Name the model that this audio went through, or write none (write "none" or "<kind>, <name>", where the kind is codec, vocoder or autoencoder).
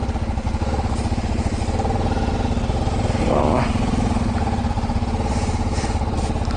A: none